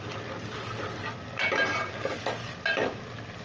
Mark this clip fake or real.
real